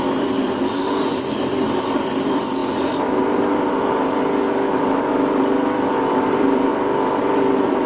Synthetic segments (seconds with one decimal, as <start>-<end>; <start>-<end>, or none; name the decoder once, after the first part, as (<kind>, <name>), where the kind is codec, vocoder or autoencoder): 0.0-2.6 (vocoder, BigVGAN v2); 4.4-7.9